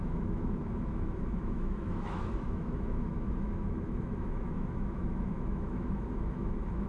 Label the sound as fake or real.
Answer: fake